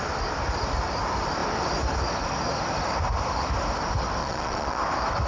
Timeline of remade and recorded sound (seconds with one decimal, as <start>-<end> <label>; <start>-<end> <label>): 0.0-4.2 recorded; 4.2-4.8 remade; 4.8-5.3 recorded